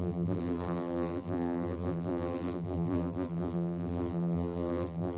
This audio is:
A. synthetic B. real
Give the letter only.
A